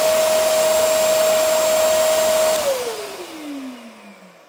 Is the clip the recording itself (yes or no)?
yes